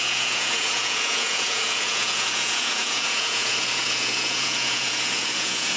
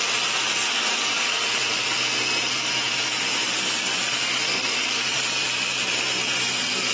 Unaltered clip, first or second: second